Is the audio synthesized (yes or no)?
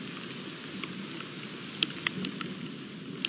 no